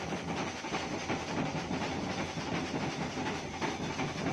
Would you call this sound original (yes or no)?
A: yes